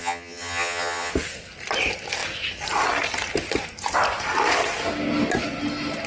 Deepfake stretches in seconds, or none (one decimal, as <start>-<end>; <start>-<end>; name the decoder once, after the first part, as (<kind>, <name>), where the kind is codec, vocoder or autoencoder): 0.0-1.1 (vocoder, HiFi-GAN)